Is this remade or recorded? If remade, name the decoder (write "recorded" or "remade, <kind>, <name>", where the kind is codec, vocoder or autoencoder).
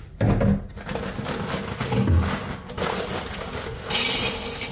recorded